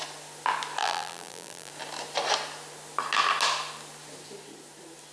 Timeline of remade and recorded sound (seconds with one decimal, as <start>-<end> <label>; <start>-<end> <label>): 0.0-0.8 recorded; 0.8-1.7 remade; 1.7-5.1 recorded